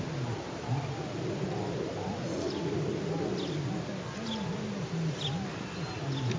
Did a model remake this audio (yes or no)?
no